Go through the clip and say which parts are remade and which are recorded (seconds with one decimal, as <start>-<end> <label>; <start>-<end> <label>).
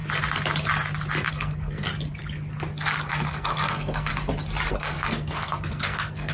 0.0-1.3 recorded; 1.3-1.9 remade; 1.9-3.1 recorded; 3.1-4.1 remade; 4.1-4.7 recorded; 4.7-6.3 remade